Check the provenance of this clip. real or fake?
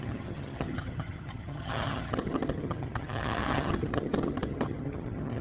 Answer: fake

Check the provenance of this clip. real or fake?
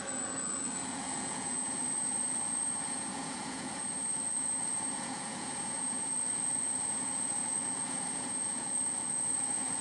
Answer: fake